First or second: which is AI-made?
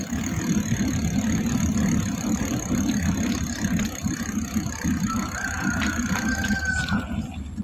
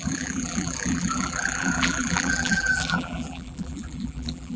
second